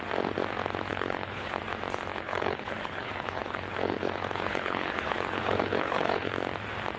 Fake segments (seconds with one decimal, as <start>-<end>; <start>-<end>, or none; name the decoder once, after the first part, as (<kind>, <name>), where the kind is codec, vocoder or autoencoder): 0.9-1.6 (codec, HILCodec); 2.1-6.3